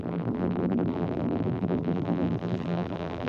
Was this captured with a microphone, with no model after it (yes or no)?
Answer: no